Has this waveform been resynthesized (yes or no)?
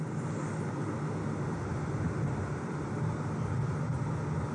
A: no